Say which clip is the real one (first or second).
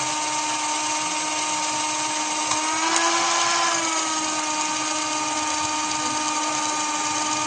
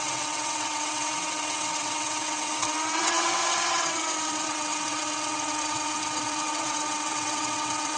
first